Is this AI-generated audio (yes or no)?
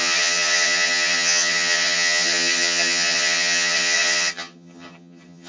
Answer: yes